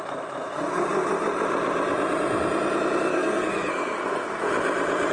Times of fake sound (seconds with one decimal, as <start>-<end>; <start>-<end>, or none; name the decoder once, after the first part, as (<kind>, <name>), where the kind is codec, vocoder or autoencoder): 3.1-4.4 (codec, SNAC)